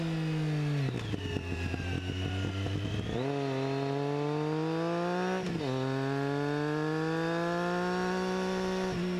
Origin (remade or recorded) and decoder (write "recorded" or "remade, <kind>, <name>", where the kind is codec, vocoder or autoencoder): recorded